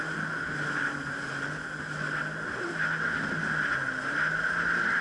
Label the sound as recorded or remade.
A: recorded